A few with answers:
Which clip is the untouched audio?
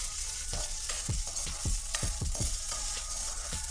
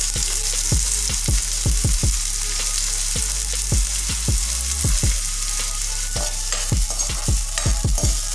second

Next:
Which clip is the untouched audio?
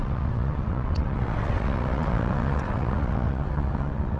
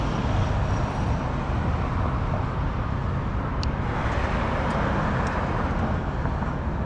second